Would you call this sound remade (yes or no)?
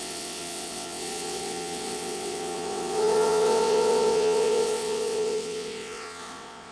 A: yes